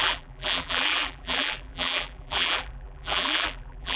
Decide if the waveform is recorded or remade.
remade